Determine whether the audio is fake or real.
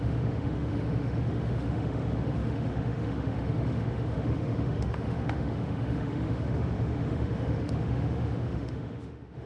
fake